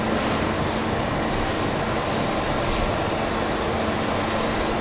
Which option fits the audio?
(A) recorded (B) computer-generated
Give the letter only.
A